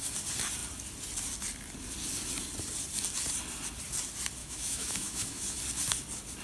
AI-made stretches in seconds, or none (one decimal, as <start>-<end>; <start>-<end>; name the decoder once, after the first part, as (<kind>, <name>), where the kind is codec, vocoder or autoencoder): 4.4-5.6 (autoencoder, DAC-VAE)